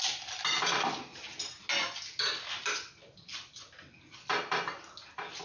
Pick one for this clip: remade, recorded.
recorded